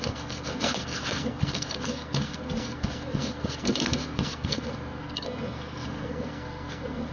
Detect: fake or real fake